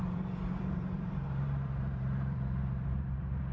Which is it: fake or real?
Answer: fake